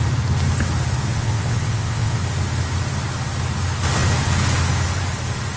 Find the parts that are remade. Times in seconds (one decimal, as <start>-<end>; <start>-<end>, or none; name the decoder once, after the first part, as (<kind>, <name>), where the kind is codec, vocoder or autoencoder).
1.1-2.2 (vocoder, WaveNeXt)

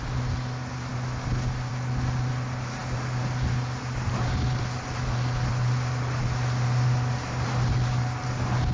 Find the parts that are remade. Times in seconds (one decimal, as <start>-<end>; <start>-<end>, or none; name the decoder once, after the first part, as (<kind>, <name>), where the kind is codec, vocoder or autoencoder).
none